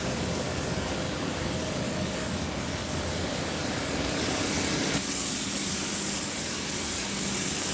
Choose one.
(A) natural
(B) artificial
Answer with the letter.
B